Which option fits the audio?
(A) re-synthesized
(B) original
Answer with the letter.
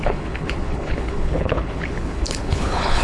A